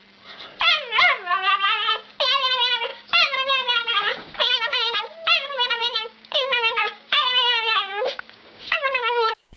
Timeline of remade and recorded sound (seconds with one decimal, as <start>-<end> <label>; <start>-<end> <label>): 0.0-2.9 recorded; 2.9-5.0 remade; 5.0-5.8 recorded; 5.8-9.6 remade

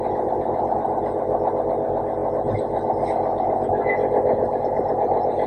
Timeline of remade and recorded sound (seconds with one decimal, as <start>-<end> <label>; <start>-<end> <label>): 0.0-5.5 recorded

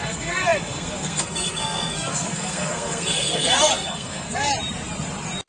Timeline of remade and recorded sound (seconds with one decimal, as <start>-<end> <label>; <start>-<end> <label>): 0.0-4.5 remade; 4.5-5.5 recorded

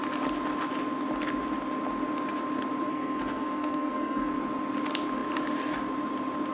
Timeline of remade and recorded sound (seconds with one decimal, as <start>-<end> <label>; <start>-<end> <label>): 0.0-2.9 recorded; 2.9-4.3 remade; 4.3-6.5 recorded